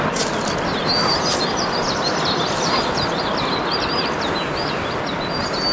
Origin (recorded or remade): recorded